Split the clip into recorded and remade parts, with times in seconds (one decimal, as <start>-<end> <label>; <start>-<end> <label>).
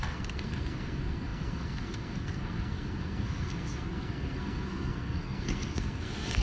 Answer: 0.0-6.4 remade